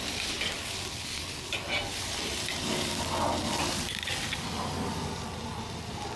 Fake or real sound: real